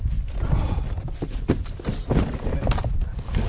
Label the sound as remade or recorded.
recorded